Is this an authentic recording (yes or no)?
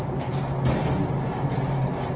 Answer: yes